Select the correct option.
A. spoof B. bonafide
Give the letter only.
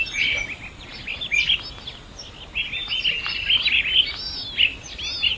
B